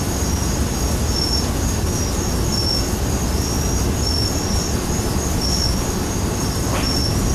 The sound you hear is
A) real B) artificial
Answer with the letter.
A